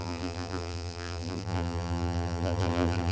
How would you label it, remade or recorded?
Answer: remade